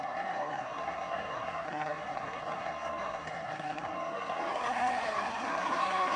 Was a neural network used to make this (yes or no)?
yes